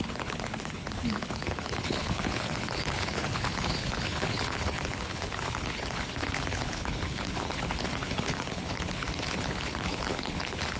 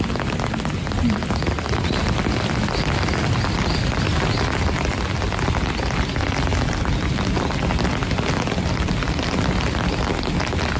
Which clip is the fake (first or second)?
first